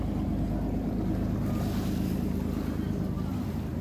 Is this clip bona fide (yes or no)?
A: yes